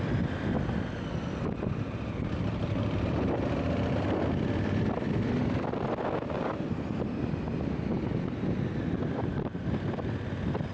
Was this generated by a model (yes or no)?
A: no